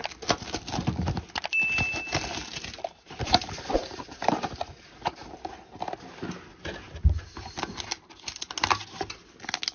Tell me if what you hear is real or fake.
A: real